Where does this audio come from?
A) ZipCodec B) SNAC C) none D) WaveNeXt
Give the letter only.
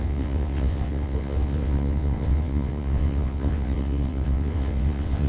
D